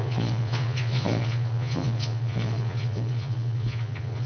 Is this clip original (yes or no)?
no